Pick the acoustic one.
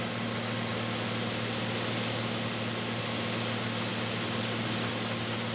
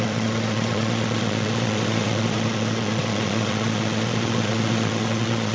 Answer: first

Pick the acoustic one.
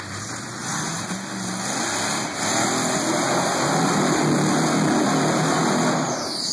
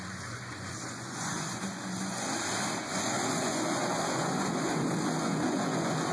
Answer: first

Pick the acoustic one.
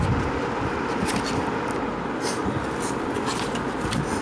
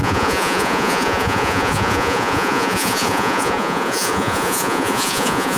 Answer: first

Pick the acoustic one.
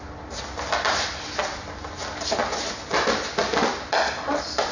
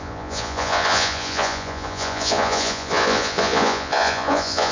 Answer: first